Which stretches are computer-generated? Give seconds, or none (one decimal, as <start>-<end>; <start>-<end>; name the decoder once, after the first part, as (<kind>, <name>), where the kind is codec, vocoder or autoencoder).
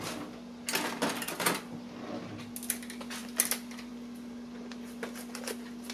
none